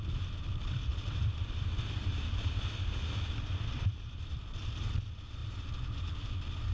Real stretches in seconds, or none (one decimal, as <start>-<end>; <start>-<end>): 0.9-3.7; 5.4-6.1